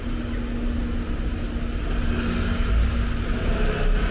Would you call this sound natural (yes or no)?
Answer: yes